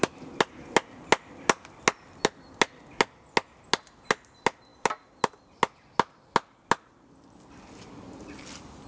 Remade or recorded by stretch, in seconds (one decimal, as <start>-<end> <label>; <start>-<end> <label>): 0.0-8.9 recorded